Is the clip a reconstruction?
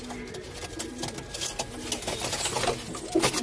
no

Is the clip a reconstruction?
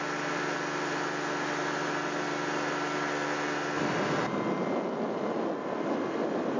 no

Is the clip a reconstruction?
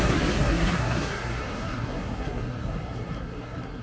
yes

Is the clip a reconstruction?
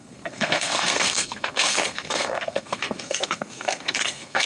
yes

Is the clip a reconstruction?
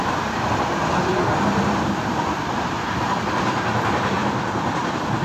yes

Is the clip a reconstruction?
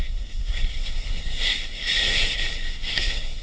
yes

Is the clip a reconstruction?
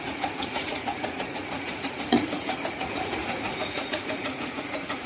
yes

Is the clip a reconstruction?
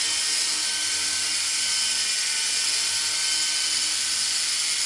no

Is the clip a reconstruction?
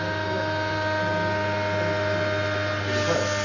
no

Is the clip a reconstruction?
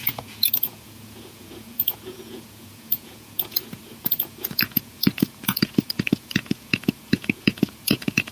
yes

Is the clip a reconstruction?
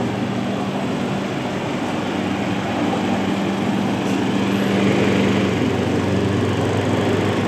no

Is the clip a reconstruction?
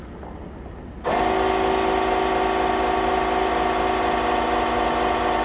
no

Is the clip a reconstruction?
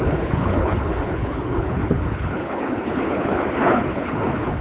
yes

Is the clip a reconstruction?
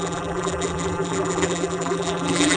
yes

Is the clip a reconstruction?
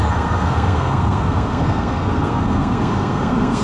yes